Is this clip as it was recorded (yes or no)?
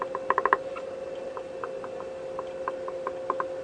yes